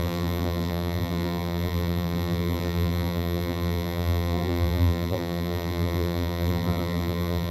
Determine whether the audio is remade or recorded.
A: remade